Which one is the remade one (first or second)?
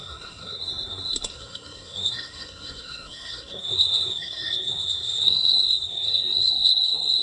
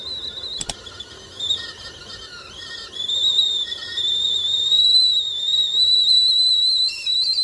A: first